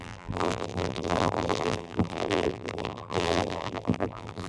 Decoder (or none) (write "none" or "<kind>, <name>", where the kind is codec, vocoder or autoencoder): vocoder, BigVGAN v2